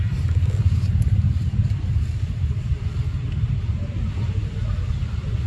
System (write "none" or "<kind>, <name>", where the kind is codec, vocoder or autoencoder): none